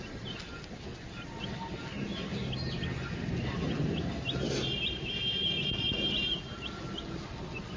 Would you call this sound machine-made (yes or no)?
no